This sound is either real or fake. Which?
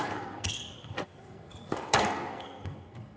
fake